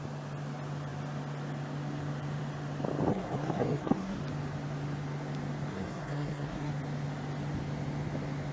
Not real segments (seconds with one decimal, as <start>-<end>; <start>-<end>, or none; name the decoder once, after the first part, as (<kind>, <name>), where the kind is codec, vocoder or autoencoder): 3.1-4.2 (codec, SNAC); 5.7-6.7